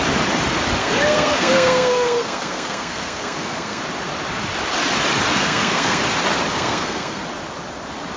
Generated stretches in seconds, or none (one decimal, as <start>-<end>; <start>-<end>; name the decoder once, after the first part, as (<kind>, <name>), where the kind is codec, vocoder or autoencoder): 0.8-3.8 (codec, SNAC); 5.3-6.0; 6.5-7.2